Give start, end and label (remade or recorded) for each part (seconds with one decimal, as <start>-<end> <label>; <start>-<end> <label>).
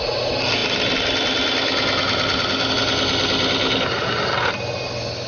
0.0-5.3 recorded